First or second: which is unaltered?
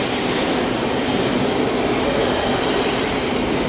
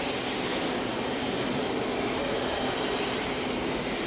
second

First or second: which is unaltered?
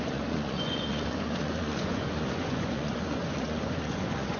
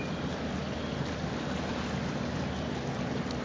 second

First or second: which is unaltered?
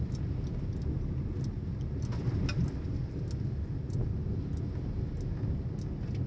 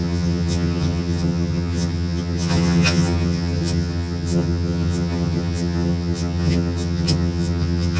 first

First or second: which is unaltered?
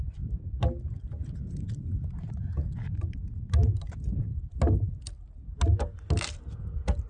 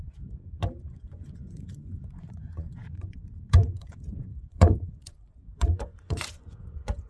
first